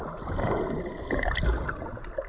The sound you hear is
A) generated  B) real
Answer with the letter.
B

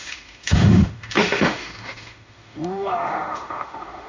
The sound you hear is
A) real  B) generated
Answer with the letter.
B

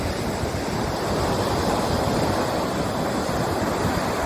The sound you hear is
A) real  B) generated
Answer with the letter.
A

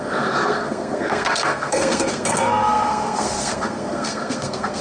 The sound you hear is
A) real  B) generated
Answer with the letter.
B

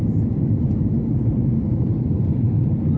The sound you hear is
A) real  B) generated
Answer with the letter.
B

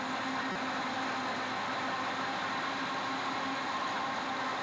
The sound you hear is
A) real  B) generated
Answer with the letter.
A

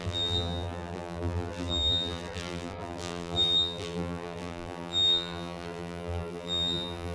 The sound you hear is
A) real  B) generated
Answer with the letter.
B